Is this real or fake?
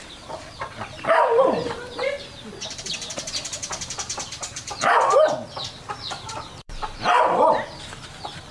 fake